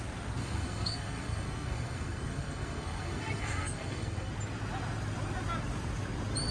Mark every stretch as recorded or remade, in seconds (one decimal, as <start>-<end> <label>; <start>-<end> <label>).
0.0-0.4 recorded; 0.4-4.3 remade; 4.3-6.5 recorded